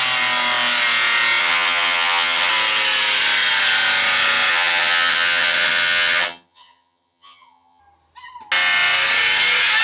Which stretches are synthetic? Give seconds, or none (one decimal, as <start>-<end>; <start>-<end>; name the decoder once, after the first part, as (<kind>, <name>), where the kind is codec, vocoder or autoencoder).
1.4-2.5 (vocoder, HiFi-GAN); 4.5-7.8